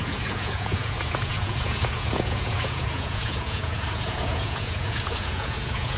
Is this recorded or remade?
remade